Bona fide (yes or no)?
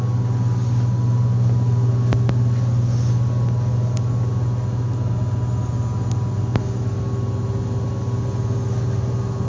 yes